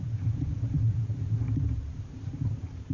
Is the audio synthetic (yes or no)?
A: yes